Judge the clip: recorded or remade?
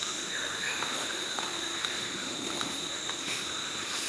remade